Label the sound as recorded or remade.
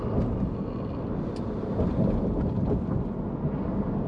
recorded